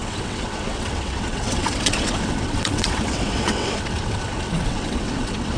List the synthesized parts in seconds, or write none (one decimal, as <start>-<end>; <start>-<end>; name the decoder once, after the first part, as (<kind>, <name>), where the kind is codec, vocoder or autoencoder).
0.0-5.6 (vocoder, WaveNeXt)